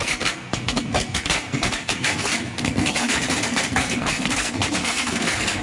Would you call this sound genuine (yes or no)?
no